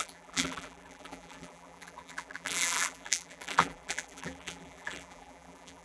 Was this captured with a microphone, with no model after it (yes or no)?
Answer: no